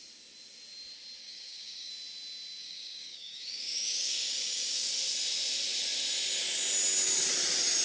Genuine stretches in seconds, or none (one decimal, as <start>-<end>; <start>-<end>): 0.0-1.2; 1.9-2.6; 5.0-7.8